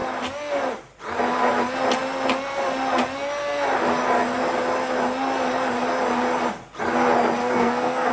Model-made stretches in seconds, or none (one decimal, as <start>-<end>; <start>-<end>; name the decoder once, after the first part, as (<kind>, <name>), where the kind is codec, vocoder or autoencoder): 7.4-8.1 (codec, SNAC)